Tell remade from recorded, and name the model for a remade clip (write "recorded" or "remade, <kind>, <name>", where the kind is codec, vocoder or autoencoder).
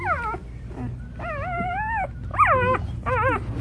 recorded